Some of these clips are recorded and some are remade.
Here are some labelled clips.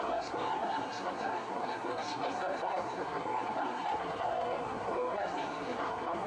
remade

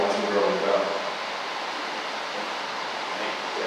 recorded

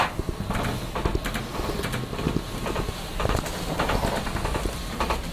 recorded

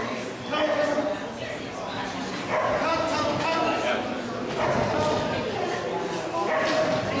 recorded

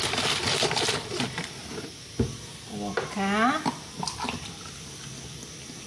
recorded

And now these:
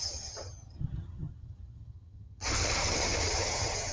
remade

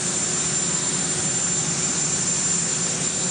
recorded